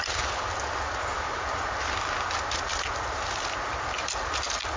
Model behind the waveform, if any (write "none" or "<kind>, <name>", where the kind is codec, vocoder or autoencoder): none